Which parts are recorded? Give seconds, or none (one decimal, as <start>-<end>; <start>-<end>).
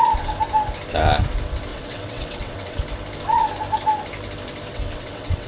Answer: 0.0-1.7; 2.8-4.7